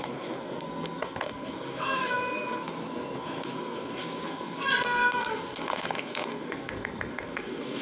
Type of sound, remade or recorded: remade